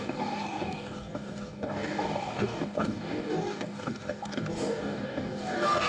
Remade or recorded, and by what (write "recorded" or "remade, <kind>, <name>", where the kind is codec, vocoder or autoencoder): remade, codec, DAC